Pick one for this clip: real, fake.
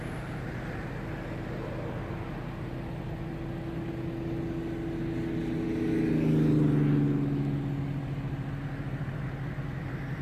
real